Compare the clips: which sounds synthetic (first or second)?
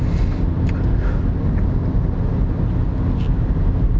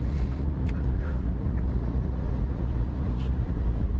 second